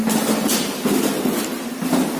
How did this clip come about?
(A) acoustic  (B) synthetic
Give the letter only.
A